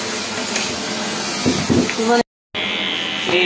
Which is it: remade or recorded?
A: recorded